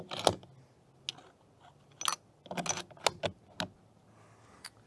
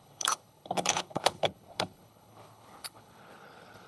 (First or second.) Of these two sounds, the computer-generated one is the second